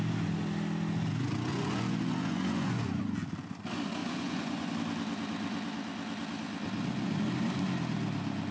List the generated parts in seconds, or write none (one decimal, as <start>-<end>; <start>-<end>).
1.5-3.0; 4.0-4.7